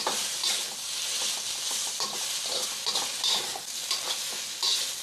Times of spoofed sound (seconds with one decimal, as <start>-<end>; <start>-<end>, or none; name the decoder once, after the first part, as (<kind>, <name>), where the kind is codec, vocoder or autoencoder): none